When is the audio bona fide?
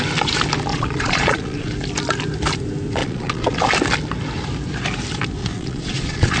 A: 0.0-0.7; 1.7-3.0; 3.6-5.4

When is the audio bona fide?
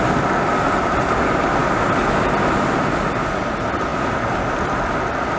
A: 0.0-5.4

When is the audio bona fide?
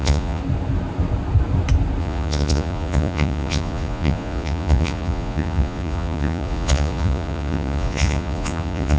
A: 0.4-2.0